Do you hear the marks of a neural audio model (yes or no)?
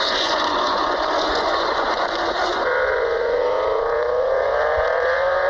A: yes